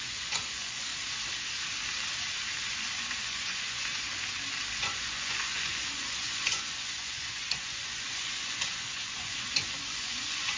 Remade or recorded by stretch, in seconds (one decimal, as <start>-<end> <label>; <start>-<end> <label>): 0.0-0.9 remade; 0.9-2.7 recorded; 2.7-4.1 remade; 4.1-4.8 recorded; 4.8-10.6 remade